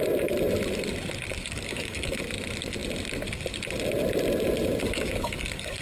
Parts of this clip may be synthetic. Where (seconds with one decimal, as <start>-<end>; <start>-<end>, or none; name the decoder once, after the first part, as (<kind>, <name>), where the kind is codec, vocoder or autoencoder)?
1.3-2.2 (codec, DAC); 4.8-5.8